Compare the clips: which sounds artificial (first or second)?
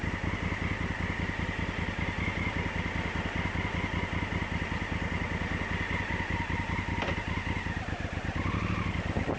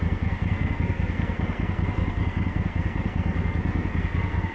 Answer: second